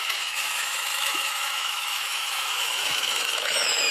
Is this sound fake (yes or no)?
yes